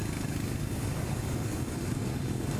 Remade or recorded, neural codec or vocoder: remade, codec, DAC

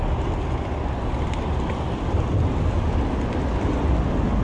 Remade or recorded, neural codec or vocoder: recorded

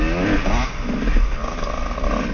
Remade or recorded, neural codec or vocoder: recorded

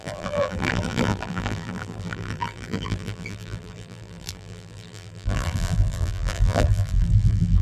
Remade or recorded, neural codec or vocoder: remade, vocoder, BigVGAN v2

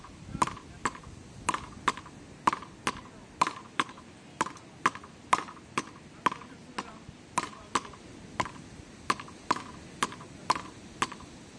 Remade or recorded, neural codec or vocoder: recorded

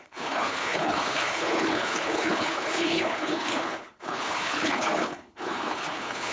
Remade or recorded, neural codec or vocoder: remade, codec, HILCodec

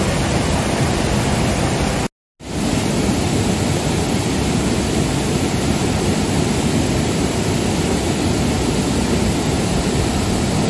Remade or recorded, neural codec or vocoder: recorded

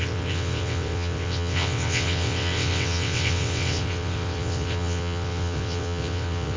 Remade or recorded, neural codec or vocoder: remade, vocoder, WaveNeXt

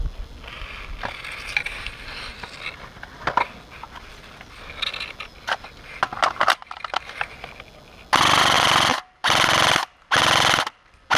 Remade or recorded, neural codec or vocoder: recorded